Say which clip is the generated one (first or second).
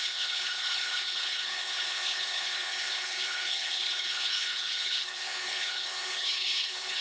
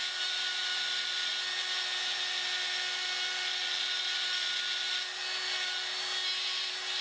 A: first